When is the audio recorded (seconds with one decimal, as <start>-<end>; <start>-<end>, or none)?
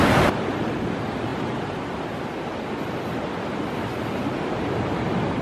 0.0-5.4